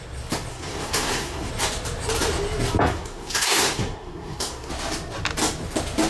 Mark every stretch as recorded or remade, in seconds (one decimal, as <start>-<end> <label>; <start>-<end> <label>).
0.0-0.5 recorded; 0.5-1.5 remade; 1.5-2.9 recorded; 2.9-4.7 remade; 4.7-6.1 recorded